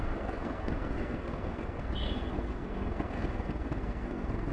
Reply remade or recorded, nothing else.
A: remade